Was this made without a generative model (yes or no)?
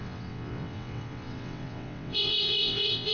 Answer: no